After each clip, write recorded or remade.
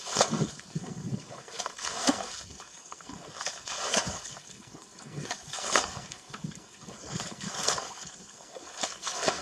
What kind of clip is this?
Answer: remade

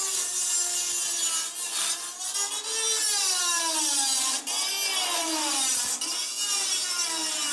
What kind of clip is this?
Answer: recorded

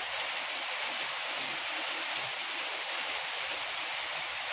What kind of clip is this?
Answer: remade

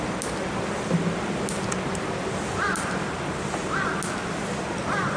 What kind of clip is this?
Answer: recorded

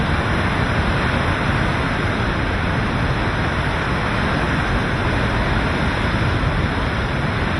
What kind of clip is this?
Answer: recorded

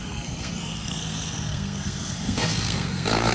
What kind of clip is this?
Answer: remade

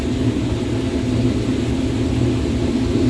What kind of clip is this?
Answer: recorded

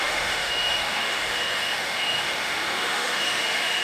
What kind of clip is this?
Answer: remade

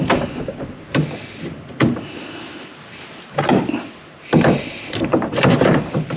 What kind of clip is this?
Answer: recorded